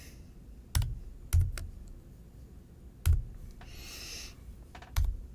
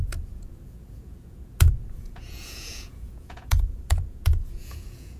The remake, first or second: second